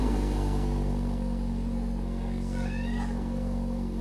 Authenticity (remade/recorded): remade